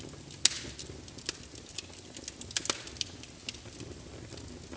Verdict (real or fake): real